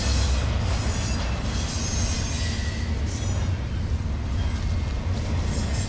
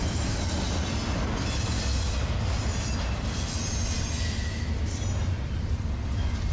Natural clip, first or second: first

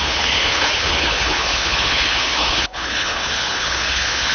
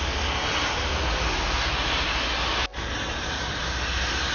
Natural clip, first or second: second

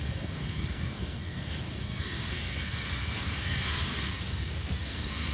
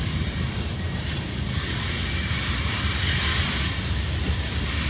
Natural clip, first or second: second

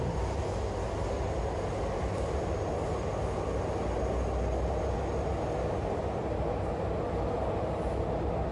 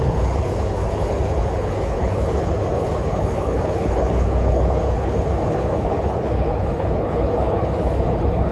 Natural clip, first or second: first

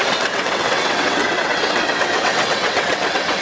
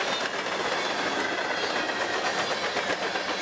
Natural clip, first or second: second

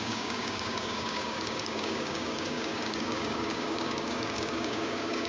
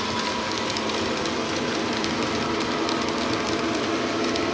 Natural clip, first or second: second